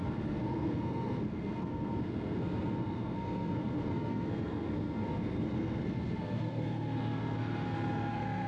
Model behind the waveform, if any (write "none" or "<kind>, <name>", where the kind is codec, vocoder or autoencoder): codec, SNAC